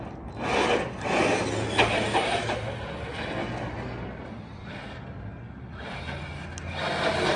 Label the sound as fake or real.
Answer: real